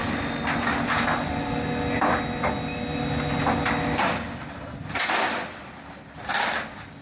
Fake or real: real